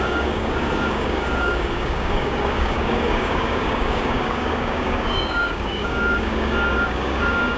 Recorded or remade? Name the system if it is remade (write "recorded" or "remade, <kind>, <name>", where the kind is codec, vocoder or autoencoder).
remade, codec, DAC